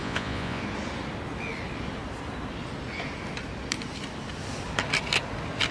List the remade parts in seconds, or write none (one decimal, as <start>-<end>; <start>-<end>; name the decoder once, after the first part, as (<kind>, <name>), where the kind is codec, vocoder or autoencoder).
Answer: 0.0-0.6 (vocoder, Vocos)